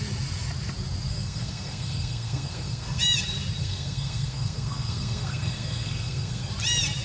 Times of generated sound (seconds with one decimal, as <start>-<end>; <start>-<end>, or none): 1.1-3.0; 3.6-6.5